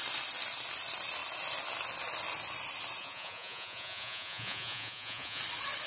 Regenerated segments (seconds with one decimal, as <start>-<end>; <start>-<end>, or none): 3.0-5.4

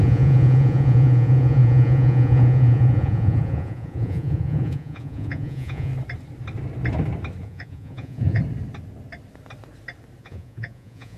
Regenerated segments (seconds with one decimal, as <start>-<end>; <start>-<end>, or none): 0.0-5.9; 7.4-8.4; 10.2-11.2

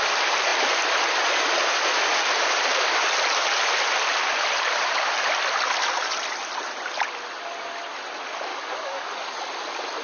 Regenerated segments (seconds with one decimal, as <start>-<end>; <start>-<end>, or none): 8.5-9.1